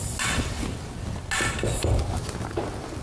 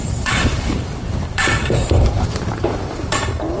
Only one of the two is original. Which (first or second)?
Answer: first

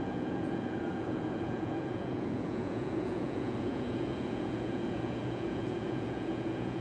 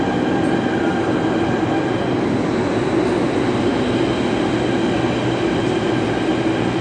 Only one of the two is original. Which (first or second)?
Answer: second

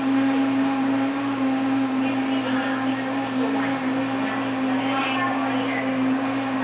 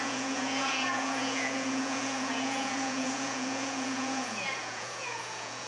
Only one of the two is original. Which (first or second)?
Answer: first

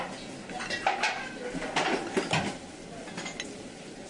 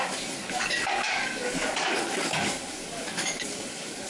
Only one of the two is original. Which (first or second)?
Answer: first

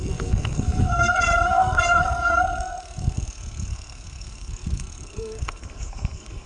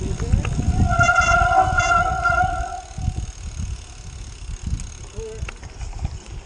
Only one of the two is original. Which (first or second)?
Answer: second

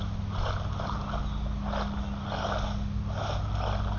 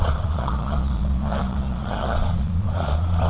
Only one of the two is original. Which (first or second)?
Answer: first